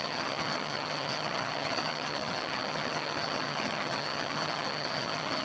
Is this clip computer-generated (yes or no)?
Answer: yes